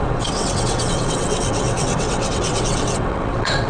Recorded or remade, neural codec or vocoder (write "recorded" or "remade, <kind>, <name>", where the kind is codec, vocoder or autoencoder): remade, vocoder, WaveNeXt